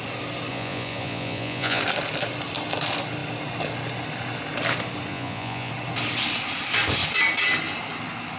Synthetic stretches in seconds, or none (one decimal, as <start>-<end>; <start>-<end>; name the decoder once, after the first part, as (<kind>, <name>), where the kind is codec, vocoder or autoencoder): 0.5-1.8 (vocoder, Vocos); 5.1-5.7